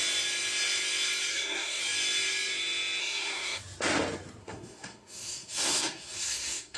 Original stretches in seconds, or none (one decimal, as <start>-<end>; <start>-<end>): 0.0-1.3; 1.8-3.0; 3.6-4.4